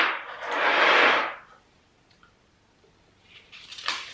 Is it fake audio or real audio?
real